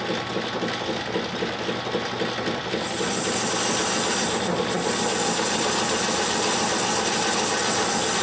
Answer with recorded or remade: recorded